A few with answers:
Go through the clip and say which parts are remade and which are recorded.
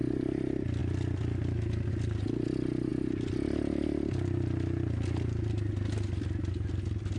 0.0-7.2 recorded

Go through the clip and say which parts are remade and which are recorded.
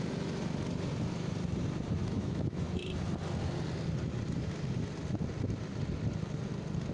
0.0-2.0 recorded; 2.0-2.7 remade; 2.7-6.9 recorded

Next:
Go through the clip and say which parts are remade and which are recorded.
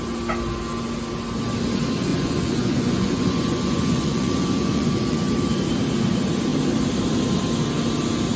0.0-2.1 recorded; 2.1-5.3 remade; 5.3-8.4 recorded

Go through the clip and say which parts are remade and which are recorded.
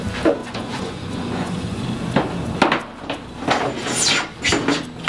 0.0-0.4 recorded; 0.4-1.8 remade; 1.8-5.1 recorded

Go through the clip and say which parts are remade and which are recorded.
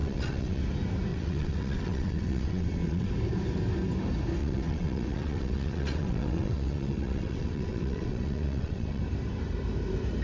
0.0-0.6 remade; 0.6-1.1 recorded; 1.1-3.1 remade; 3.1-4.4 recorded; 4.4-9.0 remade; 9.0-10.2 recorded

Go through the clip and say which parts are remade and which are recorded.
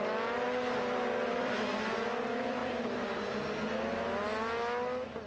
0.0-5.3 recorded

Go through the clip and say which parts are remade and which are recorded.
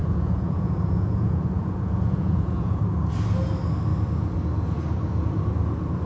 0.0-2.8 remade; 2.8-6.1 recorded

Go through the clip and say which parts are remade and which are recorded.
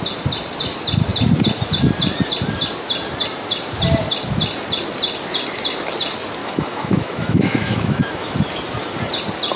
0.0-6.4 recorded; 6.4-8.4 remade; 8.4-9.6 recorded